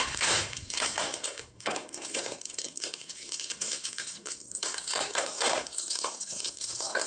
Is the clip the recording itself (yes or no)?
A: no